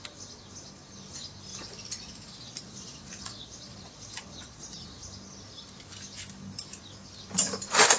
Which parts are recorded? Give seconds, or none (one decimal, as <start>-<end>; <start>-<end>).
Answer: 0.0-1.5; 5.0-8.0